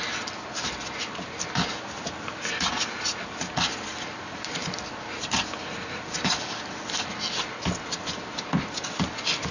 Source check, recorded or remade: recorded